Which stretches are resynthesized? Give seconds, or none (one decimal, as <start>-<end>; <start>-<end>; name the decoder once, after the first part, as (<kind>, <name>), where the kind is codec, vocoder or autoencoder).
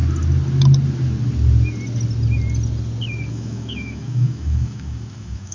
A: 3.3-5.5 (autoencoder, DAC-VAE)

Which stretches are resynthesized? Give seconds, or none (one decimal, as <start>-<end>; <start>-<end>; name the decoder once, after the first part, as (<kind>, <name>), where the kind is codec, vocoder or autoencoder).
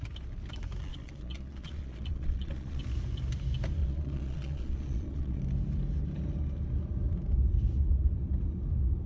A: 0.9-2.8 (vocoder, Vocos); 3.8-5.4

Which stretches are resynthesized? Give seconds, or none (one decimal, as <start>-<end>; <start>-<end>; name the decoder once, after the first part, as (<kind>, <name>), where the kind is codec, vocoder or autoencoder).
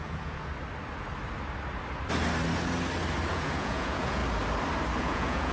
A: 0.0-0.5 (vocoder, Vocos); 3.3-4.2; 5.0-5.5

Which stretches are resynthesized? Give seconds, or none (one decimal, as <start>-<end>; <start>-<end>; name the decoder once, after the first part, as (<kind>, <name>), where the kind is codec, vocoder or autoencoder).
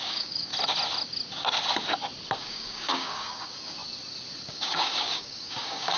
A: 0.0-0.5 (codec, DAC); 2.4-3.8; 4.5-6.0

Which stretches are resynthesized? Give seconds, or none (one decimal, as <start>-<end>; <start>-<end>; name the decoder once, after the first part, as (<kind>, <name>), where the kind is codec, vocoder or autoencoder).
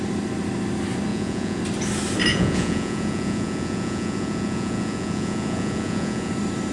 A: 1.1-1.6 (vocoder, Vocos); 2.3-6.3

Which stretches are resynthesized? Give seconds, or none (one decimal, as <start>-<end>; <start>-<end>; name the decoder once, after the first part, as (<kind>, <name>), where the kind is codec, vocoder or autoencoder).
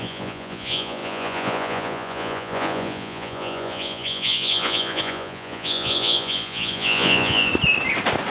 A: 0.0-7.5 (vocoder, Vocos)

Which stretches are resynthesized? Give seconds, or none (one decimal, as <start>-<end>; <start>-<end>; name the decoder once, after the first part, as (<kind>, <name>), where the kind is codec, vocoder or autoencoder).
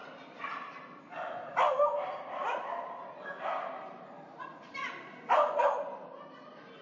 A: none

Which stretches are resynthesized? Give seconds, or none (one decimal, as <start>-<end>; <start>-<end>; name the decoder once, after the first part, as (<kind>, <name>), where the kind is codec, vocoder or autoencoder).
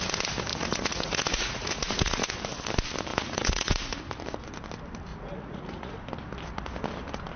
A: 0.5-2.3 (vocoder, Vocos); 3.1-4.0; 5.1-6.0